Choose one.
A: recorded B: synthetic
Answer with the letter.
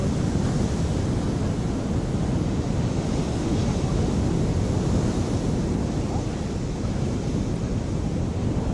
A